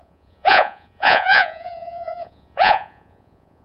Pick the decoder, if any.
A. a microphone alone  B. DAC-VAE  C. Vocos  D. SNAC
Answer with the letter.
C